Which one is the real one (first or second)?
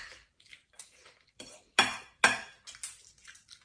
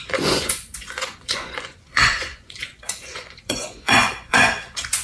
first